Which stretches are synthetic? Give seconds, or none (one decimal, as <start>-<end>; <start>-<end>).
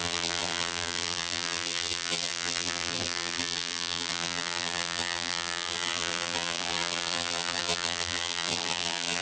0.0-9.2